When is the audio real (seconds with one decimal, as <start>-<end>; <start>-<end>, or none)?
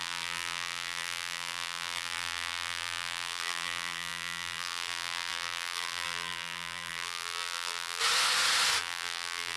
8.0-8.8